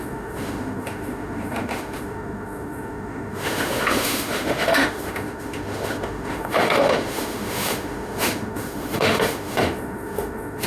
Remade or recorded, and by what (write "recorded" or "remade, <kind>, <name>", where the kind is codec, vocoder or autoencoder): remade, autoencoder, DAC-VAE